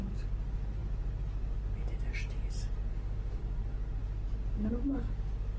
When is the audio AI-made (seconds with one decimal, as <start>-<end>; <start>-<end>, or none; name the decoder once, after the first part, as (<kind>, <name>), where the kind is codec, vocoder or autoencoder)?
2.9-3.4 (autoencoder, DAC-VAE)